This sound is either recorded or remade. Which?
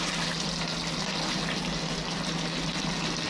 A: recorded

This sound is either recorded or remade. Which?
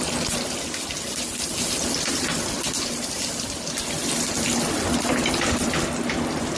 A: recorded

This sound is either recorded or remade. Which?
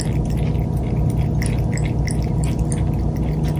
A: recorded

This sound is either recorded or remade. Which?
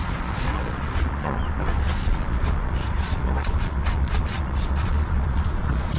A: remade